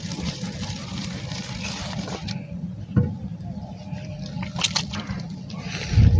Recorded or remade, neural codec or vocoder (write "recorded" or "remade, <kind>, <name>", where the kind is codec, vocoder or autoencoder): recorded